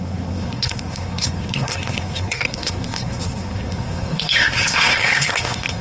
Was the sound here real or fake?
fake